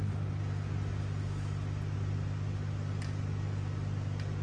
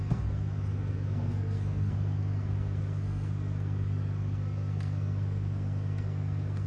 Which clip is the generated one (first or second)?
second